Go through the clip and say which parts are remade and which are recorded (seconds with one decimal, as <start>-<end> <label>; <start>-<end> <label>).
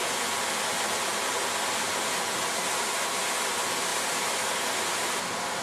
0.0-5.6 recorded